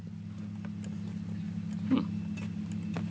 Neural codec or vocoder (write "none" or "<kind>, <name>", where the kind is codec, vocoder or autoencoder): none